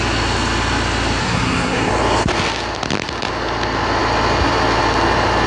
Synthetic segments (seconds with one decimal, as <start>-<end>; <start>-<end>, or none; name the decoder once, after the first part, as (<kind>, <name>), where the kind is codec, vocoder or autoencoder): 1.2-1.9 (codec, SNAC)